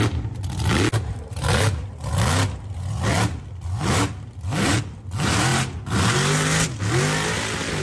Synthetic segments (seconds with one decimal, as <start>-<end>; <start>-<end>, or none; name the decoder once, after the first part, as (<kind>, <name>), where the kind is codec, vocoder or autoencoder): none